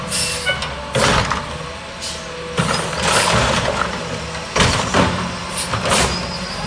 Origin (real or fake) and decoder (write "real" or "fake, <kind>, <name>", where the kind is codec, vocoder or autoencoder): real